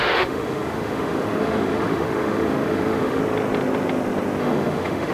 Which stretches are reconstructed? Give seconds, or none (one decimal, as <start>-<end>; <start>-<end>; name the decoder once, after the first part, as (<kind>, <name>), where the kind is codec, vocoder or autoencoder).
0.0-3.2 (autoencoder, DAC-VAE); 4.4-5.1